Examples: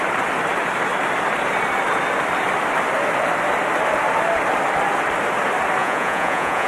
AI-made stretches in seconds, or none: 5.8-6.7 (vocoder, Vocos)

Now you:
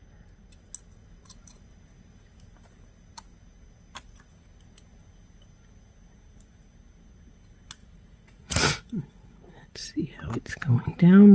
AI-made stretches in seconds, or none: 7.8-10.3 (vocoder, Vocos)

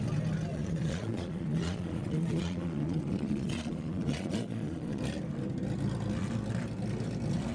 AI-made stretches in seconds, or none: 0.5-5.0 (vocoder, Vocos)

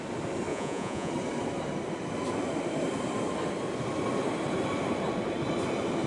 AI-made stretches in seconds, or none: 0.5-1.1 (vocoder, Vocos)